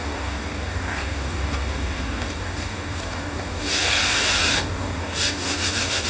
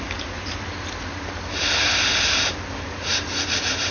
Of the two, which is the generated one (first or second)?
first